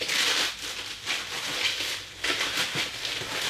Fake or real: real